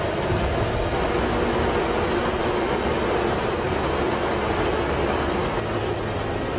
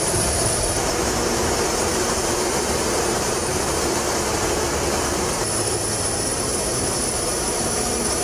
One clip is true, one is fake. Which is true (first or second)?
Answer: first